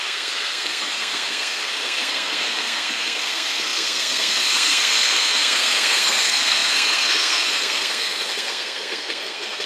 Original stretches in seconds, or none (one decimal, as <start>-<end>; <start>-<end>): none